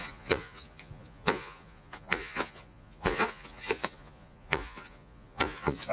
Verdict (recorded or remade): remade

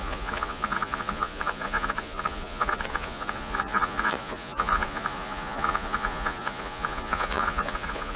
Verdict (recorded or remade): remade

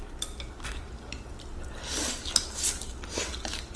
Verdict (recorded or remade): recorded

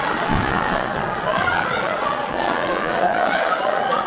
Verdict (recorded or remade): remade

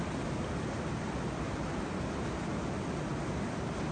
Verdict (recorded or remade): recorded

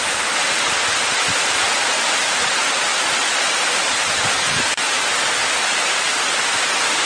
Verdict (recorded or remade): recorded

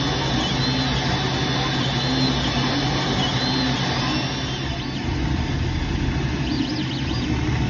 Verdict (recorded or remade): recorded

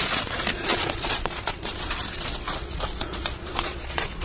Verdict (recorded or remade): remade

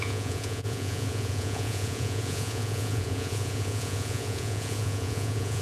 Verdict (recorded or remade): remade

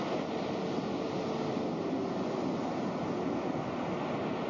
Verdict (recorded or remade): recorded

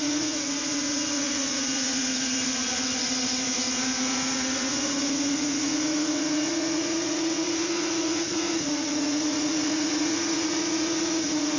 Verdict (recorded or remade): remade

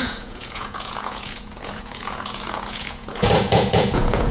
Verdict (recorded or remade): remade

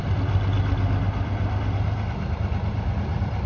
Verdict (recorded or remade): recorded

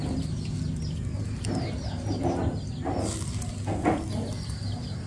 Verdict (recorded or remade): recorded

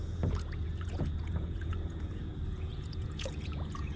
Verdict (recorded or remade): remade